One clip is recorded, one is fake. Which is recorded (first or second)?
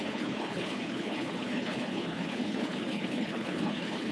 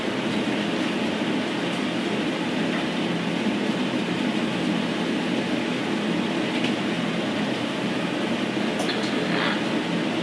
second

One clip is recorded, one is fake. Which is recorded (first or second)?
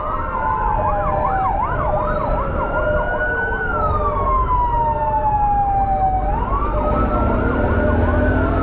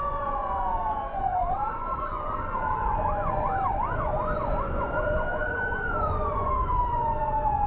first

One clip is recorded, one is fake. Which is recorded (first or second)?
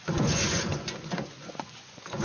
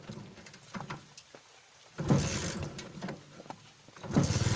second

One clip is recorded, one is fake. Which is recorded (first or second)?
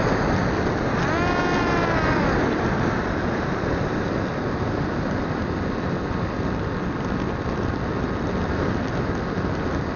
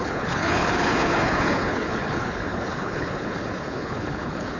first